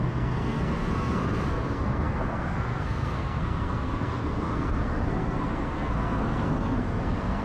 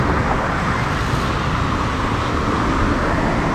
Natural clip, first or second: second